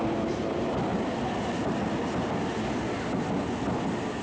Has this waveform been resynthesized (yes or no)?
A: no